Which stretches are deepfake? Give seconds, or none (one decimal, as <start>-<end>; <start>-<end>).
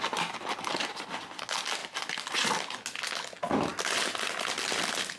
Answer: none